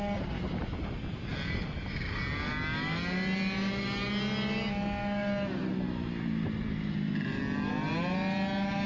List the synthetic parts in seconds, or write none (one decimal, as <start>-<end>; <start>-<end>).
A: none